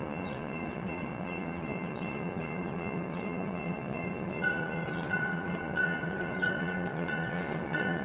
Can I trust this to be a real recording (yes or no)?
no